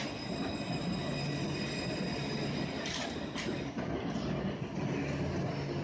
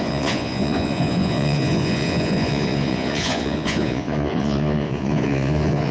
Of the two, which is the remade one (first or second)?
second